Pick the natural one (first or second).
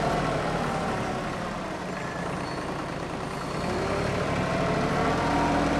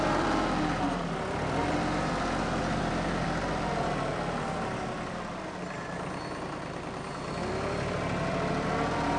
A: second